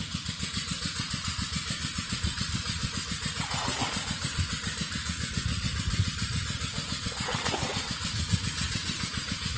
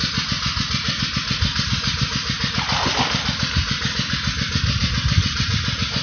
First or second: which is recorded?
second